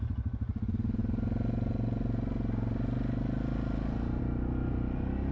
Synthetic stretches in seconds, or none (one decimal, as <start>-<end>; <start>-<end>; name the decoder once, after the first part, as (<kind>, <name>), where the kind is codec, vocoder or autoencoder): none